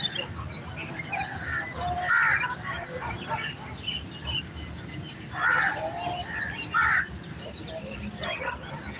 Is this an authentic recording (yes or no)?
yes